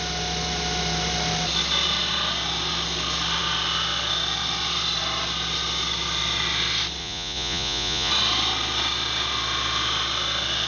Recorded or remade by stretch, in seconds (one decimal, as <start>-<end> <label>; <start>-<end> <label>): 0.0-7.0 recorded; 7.0-8.1 remade; 8.1-10.7 recorded